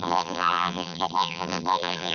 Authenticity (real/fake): fake